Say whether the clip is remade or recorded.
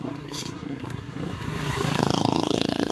remade